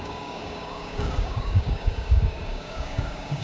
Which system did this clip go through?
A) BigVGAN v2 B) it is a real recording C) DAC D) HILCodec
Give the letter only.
C